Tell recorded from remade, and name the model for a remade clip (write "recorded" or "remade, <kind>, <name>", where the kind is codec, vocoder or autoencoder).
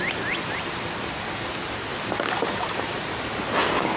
recorded